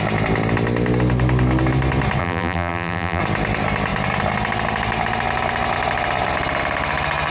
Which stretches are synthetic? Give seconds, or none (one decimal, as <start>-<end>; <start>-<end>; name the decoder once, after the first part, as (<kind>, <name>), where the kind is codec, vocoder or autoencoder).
2.2-3.2 (vocoder, BigVGAN v2)

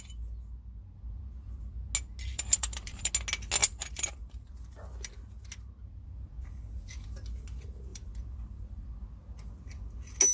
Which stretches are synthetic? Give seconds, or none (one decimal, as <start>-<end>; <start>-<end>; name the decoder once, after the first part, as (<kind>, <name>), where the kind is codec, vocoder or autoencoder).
2.3-3.1 (vocoder, BigVGAN v2); 3.6-4.5; 7.9-8.9

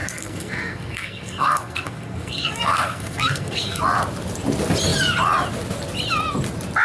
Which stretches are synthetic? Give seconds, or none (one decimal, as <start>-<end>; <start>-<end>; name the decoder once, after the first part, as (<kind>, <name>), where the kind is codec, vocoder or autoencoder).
0.0-3.8 (codec, SNAC)

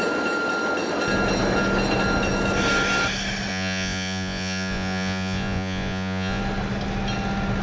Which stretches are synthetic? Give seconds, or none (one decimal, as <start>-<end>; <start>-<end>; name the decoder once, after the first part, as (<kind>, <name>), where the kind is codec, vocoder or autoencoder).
3.5-6.4 (vocoder, Vocos)

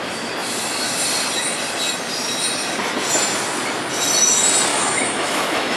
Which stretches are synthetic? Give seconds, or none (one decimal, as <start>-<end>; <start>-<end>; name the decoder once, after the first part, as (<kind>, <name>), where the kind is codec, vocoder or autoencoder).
4.7-5.8 (autoencoder, DAC-VAE)

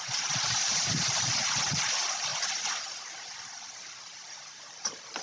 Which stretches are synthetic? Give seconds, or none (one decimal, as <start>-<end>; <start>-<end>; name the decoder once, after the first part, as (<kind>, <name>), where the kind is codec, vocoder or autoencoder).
0.0-2.3 (vocoder, BigVGAN v2); 3.1-5.2